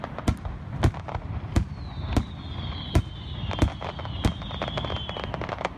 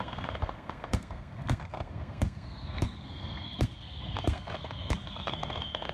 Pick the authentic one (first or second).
first